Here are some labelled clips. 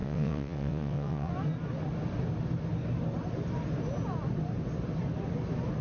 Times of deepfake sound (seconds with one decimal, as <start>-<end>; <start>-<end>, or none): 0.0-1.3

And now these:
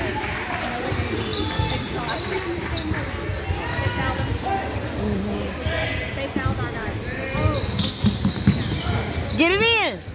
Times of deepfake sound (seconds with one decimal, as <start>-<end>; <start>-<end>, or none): none

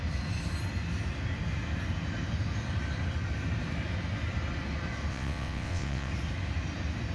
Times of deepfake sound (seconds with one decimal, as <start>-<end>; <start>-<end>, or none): 5.1-6.1

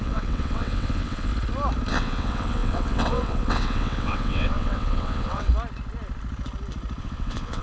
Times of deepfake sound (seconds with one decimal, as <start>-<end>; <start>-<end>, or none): 0.0-1.3; 1.9-5.5; 7.0-7.6

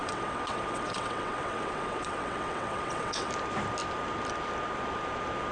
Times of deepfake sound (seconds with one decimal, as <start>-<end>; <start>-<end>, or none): 0.0-3.3